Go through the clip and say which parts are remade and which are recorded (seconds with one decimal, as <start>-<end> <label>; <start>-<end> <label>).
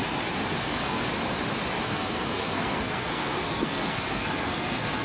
0.0-0.6 recorded; 0.6-1.0 remade; 1.0-1.8 recorded; 1.8-5.0 remade